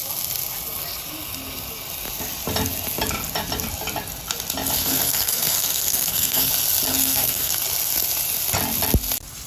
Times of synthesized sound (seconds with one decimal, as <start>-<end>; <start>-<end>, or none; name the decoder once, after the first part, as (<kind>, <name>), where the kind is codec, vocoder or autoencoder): 4.8-6.5 (codec, SNAC); 6.9-7.5